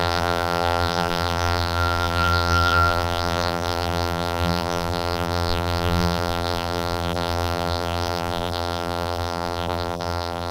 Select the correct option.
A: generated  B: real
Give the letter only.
A